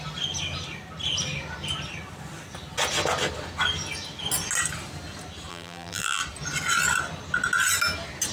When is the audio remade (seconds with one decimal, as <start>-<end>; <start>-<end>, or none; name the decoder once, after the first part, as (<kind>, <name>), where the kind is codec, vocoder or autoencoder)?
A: 5.5-6.2 (vocoder, BigVGAN v2)